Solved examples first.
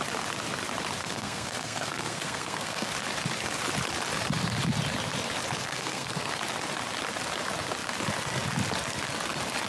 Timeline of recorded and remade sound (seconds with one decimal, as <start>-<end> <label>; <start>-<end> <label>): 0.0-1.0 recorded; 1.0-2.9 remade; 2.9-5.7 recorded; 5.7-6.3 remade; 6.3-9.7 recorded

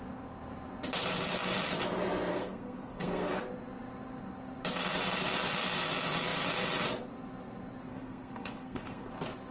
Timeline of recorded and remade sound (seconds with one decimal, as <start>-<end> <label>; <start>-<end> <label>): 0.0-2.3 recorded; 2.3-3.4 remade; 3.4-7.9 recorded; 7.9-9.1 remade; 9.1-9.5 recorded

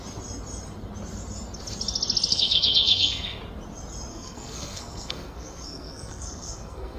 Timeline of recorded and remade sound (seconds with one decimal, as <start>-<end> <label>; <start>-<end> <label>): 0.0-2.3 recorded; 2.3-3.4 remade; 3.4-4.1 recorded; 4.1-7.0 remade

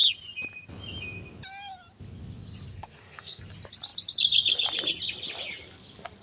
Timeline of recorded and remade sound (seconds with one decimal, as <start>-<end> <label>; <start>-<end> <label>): 0.0-2.7 recorded; 2.7-3.4 remade; 3.4-6.2 recorded

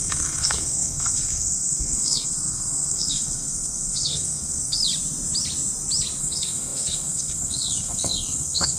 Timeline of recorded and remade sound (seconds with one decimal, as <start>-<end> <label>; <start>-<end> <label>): 0.0-4.8 remade; 4.8-6.2 recorded; 6.2-8.8 remade